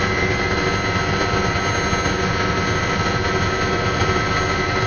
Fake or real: real